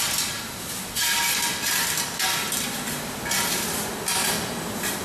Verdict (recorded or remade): recorded